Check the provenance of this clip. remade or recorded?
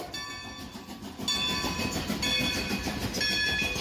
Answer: recorded